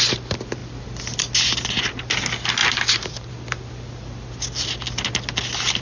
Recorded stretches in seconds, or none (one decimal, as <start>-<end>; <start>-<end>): 0.0-2.6; 3.3-5.8

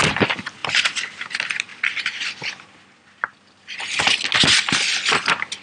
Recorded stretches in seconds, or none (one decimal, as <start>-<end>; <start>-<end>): 0.0-5.6

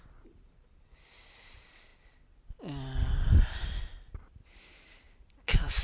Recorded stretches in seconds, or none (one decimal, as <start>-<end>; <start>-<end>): 0.0-5.8

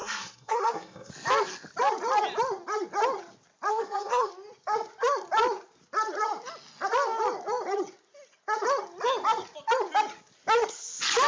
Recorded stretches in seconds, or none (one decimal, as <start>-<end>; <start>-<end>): 1.1-3.7; 4.3-11.3

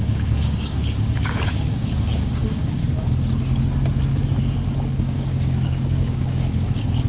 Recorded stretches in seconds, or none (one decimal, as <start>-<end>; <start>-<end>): 2.8-4.9

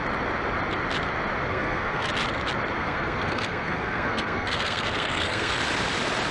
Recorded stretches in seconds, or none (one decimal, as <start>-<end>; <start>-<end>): 0.0-1.5; 2.1-2.8; 5.5-6.3